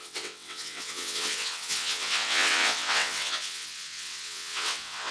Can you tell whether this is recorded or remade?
remade